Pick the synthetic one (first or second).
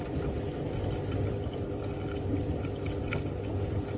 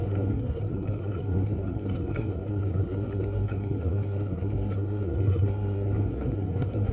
second